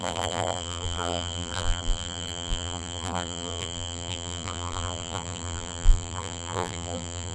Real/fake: fake